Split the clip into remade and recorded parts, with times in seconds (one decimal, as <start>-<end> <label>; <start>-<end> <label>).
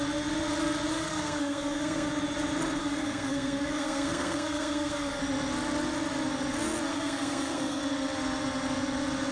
0.0-0.9 recorded; 0.9-2.1 remade; 2.1-2.8 recorded; 2.8-5.2 remade; 5.2-6.9 recorded; 6.9-7.8 remade; 7.8-9.3 recorded